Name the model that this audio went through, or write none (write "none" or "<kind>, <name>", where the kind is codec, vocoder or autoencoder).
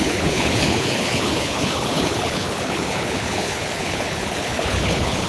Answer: codec, HILCodec